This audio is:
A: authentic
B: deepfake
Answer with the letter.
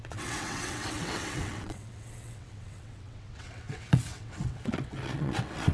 B